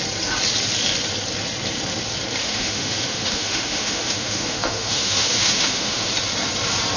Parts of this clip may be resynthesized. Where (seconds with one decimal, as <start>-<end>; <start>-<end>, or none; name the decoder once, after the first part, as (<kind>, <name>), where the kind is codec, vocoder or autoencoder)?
2.4-6.1 (autoencoder, DAC-VAE)